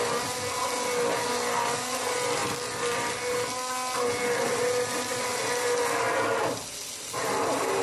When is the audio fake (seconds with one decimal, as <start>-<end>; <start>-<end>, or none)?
none